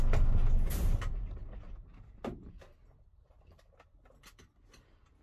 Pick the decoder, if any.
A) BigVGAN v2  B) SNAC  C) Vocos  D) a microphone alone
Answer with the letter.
D